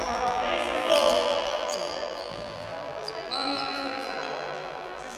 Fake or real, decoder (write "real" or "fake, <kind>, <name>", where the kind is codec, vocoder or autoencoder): fake, vocoder, BigVGAN v2